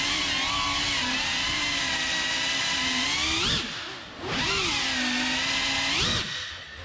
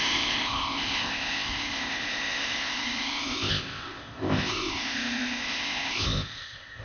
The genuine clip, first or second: first